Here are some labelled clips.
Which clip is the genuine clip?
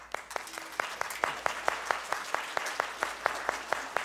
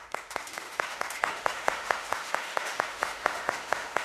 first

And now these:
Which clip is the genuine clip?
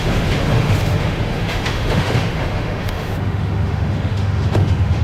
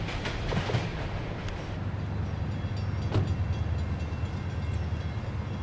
second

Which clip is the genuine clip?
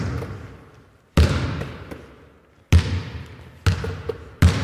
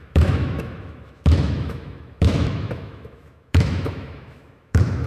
first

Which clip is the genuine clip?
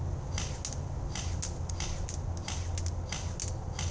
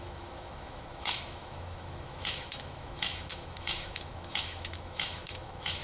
first